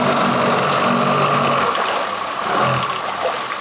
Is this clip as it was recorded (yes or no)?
yes